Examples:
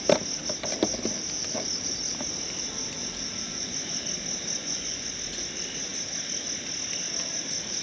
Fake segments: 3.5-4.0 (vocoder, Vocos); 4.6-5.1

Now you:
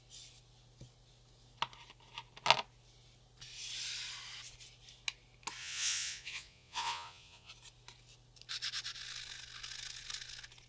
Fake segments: 5.6-7.5 (vocoder, Vocos)